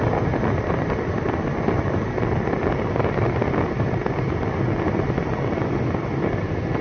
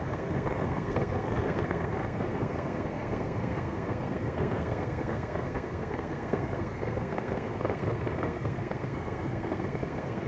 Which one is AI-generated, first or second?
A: second